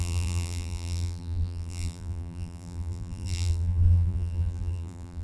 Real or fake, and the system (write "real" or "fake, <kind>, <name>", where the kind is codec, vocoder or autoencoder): fake, vocoder, BigVGAN v2